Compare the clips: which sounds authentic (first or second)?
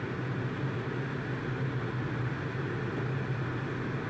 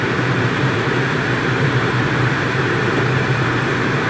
first